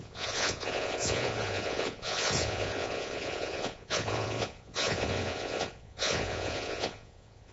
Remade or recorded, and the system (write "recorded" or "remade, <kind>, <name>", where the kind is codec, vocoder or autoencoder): remade, vocoder, Vocos